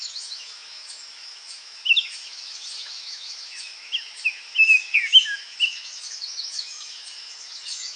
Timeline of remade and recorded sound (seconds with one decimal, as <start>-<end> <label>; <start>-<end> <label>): 0.0-8.0 remade